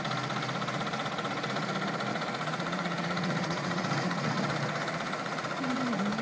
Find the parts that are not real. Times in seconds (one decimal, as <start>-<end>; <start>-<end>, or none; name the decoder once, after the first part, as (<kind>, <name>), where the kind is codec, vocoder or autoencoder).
2.1-5.8 (vocoder, Vocos)